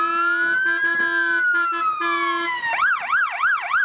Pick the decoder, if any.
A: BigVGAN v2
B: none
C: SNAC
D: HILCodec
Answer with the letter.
B